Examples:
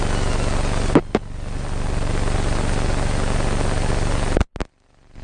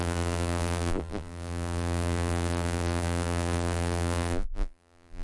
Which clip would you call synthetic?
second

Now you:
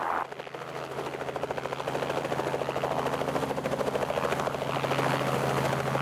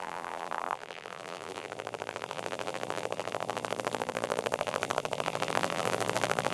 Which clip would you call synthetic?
second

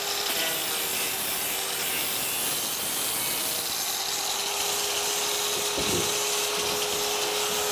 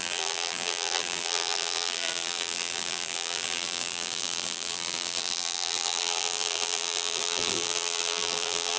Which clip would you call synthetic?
second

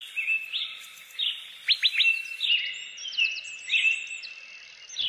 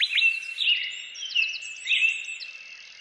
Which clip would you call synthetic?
second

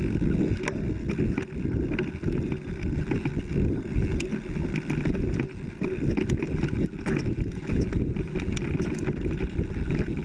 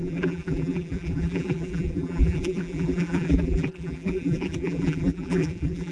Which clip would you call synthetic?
second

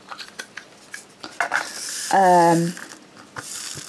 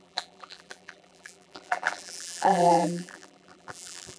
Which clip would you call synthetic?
second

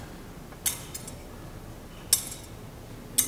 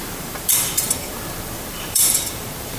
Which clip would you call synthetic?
second